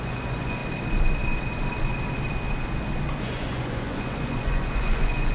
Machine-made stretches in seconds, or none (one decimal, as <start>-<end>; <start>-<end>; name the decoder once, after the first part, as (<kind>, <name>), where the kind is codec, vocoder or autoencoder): 0.0-0.6 (vocoder, Vocos); 3.2-5.3